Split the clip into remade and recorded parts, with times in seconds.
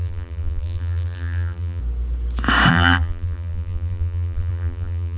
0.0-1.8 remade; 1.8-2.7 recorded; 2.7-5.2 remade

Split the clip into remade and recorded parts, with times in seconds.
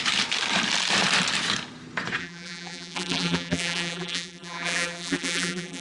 0.0-2.2 recorded; 2.2-5.8 remade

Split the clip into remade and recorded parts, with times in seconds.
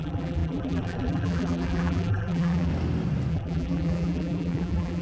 0.0-2.7 remade; 2.7-3.3 recorded; 3.3-5.0 remade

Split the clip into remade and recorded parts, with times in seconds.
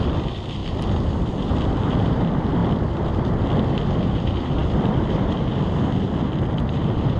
0.0-7.2 remade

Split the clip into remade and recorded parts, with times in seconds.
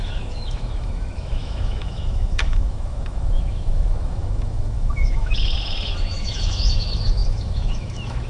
0.0-8.3 remade